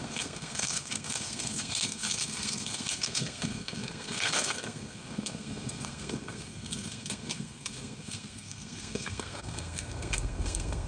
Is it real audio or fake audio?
fake